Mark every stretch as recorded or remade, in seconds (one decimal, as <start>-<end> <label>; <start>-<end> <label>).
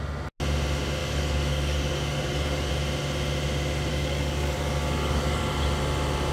0.0-1.0 recorded; 1.0-2.7 remade; 2.7-3.9 recorded; 3.9-5.4 remade; 5.4-6.3 recorded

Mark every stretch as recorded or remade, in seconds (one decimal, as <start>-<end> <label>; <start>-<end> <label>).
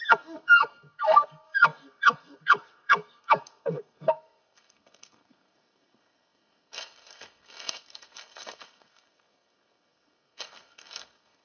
0.0-11.4 remade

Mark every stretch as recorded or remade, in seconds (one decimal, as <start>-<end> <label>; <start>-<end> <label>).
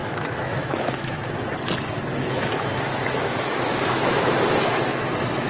0.0-1.5 remade; 1.5-2.1 recorded; 2.1-5.5 remade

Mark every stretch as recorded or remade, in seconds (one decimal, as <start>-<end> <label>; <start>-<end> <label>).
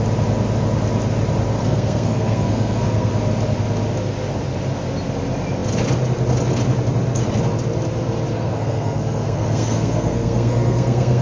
0.0-1.6 recorded; 1.6-3.1 remade; 3.1-8.3 recorded; 8.3-11.2 remade